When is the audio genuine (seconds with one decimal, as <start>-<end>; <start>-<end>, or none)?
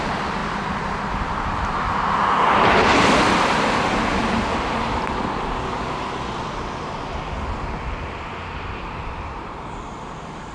0.0-10.5